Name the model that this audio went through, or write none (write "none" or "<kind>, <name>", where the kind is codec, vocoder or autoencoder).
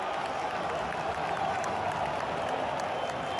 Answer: none